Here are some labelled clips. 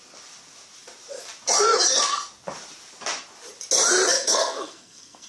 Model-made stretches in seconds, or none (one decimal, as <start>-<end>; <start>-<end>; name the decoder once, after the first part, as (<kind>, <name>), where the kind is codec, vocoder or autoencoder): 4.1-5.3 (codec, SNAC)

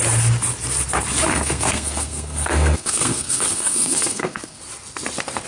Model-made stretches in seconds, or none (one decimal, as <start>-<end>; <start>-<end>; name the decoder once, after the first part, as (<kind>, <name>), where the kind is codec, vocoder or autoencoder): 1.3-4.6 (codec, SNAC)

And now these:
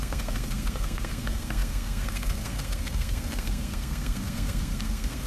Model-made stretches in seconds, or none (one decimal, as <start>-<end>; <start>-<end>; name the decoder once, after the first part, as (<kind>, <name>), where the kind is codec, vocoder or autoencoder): 0.0-5.3 (codec, SNAC)

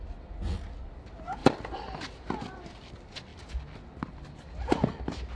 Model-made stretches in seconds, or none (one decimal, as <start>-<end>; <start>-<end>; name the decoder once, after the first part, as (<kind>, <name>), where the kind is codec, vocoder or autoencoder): none

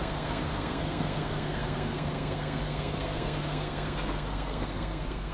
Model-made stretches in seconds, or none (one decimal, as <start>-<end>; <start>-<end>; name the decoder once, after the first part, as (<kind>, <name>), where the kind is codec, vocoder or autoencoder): 0.0-5.3 (codec, SNAC)